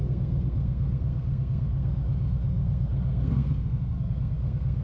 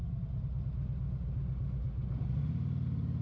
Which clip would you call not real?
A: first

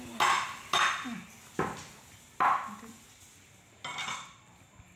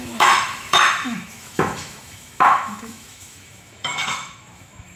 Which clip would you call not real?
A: second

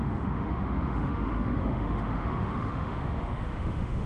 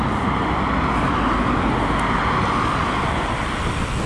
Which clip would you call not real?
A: first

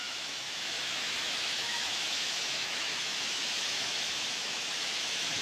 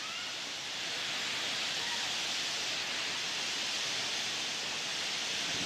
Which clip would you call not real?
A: first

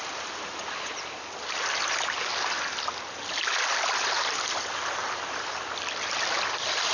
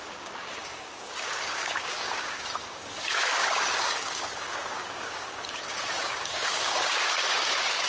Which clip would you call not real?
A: second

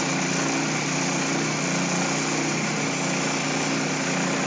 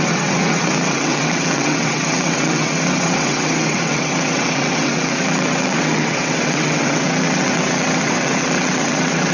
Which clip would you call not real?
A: second